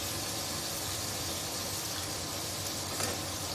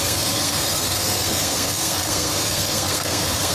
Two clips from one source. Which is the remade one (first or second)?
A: second